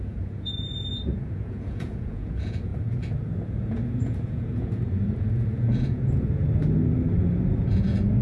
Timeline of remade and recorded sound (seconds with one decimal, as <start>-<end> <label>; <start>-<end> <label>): 0.0-6.4 remade; 6.4-7.2 recorded; 7.2-8.2 remade